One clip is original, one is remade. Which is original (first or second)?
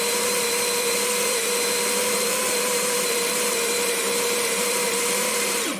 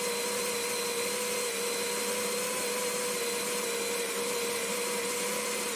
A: second